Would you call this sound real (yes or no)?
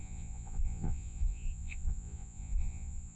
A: no